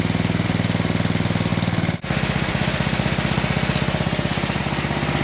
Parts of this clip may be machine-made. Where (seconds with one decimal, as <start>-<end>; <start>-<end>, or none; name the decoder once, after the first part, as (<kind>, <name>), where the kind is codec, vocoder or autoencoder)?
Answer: none